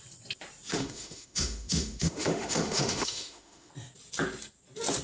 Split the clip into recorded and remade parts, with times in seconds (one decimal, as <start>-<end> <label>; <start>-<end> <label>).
0.0-0.7 recorded; 0.7-3.7 remade; 3.7-5.0 recorded